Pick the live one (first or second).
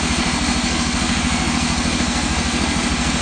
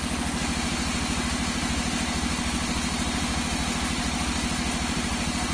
second